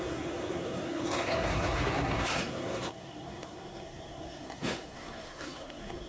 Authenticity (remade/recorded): remade